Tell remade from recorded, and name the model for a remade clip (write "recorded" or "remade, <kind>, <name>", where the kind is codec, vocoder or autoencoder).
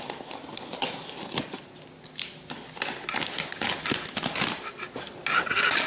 recorded